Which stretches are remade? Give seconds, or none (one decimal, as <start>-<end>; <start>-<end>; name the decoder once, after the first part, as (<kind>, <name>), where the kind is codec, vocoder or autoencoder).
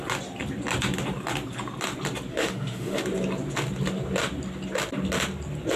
2.3-3.0 (autoencoder, DAC-VAE)